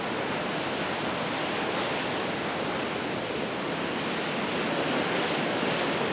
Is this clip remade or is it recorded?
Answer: recorded